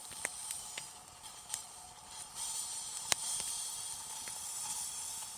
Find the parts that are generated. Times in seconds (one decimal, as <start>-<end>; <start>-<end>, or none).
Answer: none